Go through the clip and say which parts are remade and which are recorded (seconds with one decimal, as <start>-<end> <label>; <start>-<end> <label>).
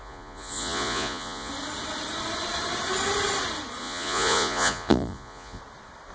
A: 0.0-1.5 remade; 1.5-3.8 recorded; 3.8-5.6 remade; 5.6-6.1 recorded